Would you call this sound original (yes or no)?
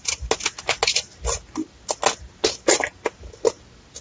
yes